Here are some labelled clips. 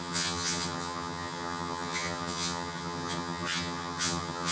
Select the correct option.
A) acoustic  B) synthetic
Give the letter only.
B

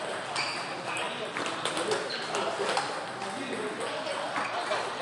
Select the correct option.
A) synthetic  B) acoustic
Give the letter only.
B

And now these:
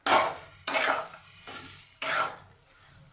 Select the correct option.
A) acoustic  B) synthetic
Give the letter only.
A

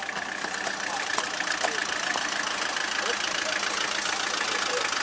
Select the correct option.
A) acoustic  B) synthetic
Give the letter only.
A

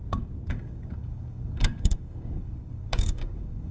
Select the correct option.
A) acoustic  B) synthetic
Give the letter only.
B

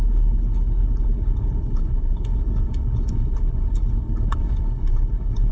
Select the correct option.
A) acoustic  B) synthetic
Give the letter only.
B